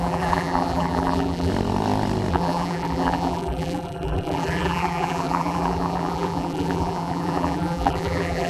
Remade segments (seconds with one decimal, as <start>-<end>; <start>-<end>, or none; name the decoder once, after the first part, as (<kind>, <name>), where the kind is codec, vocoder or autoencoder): 0.0-1.5 (vocoder, BigVGAN v2); 2.3-8.5